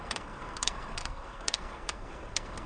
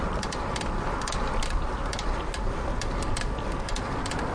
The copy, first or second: first